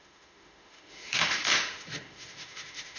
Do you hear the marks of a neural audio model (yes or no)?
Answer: yes